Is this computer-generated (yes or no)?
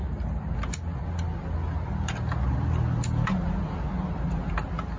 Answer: no